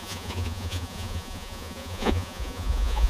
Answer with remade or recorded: remade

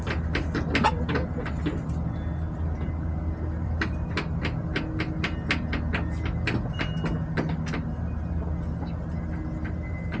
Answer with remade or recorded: recorded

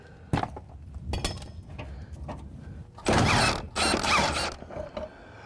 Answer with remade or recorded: recorded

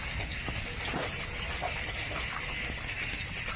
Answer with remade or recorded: recorded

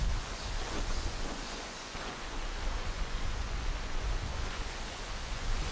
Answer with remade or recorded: remade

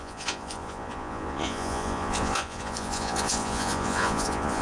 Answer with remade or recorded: remade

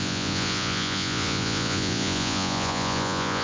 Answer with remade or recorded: remade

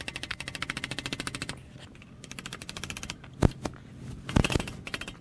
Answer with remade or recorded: recorded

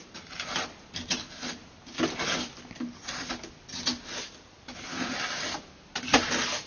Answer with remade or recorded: recorded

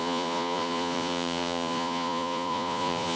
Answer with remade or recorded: remade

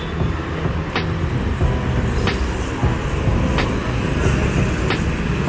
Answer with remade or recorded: recorded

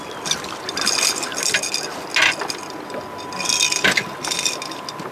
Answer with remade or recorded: recorded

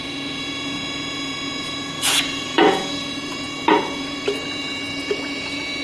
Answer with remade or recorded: remade